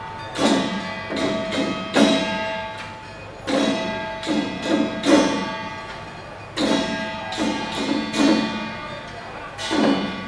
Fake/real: real